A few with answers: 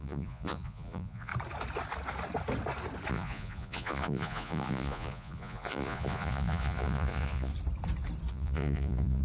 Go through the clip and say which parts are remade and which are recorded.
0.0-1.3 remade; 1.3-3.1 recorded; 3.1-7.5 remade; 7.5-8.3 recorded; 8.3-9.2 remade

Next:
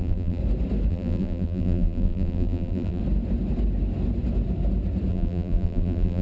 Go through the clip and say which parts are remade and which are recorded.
0.0-0.4 remade; 0.4-0.9 recorded; 0.9-3.0 remade; 3.0-5.1 recorded; 5.1-6.2 remade

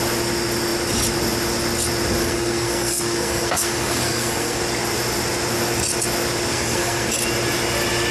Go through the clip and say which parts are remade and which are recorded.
0.0-2.2 recorded; 2.2-4.6 remade; 4.6-6.5 recorded; 6.5-7.1 remade; 7.1-8.1 recorded

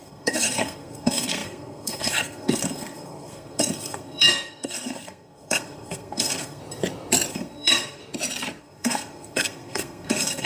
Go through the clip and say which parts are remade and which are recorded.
0.0-6.6 remade; 6.6-7.3 recorded; 7.3-8.0 remade; 8.0-8.6 recorded; 8.6-10.5 remade

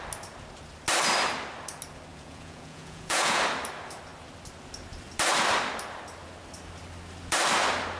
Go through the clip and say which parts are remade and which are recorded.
0.0-2.1 recorded; 2.1-3.4 remade; 3.4-8.0 recorded

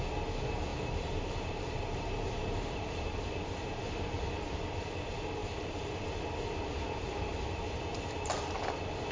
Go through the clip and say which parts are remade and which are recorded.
0.0-0.7 recorded; 0.7-3.2 remade; 3.2-5.4 recorded; 5.4-6.2 remade; 6.2-9.1 recorded